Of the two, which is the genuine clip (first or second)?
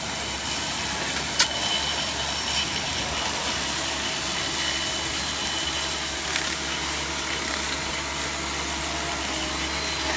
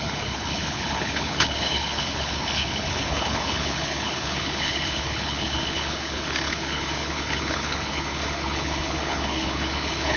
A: first